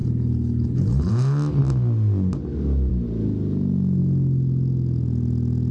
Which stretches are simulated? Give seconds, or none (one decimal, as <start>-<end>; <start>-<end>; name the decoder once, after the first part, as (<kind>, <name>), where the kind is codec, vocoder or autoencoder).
0.0-1.1 (codec, HILCodec)